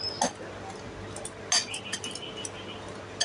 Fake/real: real